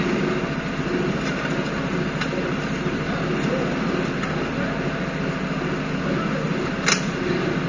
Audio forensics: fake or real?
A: real